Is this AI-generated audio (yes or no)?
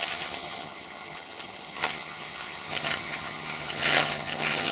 yes